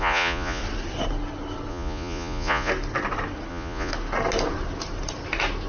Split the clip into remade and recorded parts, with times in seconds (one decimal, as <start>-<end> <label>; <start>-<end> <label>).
0.0-0.6 remade; 0.6-1.7 recorded; 1.7-2.7 remade; 2.7-3.5 recorded; 3.5-3.9 remade; 3.9-5.7 recorded